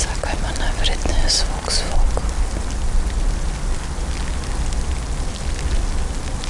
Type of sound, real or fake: real